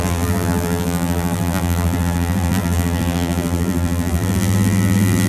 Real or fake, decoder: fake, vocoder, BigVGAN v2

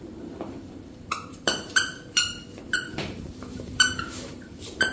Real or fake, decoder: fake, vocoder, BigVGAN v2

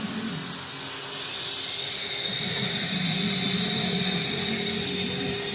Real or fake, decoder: real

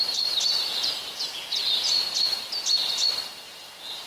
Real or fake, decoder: real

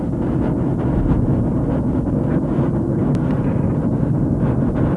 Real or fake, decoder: fake, vocoder, BigVGAN v2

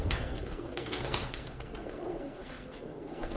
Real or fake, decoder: fake, codec, SNAC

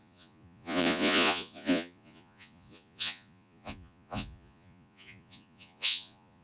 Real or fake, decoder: fake, vocoder, Vocos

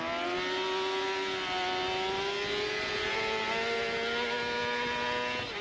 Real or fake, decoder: real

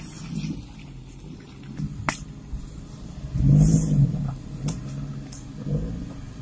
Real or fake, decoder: real